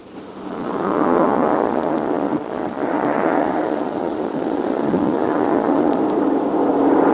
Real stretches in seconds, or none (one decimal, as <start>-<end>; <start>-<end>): 0.0-0.5; 6.0-7.1